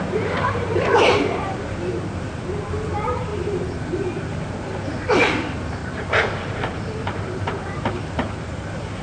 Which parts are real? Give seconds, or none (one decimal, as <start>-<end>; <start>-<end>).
3.3-4.2; 5.8-6.4